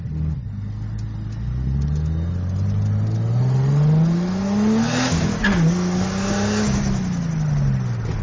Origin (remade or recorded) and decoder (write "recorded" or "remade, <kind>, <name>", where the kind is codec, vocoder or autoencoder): recorded